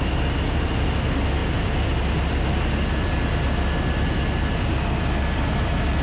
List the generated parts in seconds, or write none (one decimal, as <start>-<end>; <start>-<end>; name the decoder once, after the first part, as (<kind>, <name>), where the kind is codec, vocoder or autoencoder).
none